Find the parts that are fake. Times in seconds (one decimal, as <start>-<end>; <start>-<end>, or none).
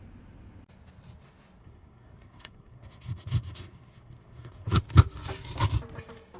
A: 1.6-4.8